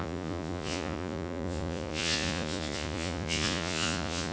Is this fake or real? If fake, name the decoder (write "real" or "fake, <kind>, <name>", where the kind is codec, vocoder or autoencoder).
fake, vocoder, Vocos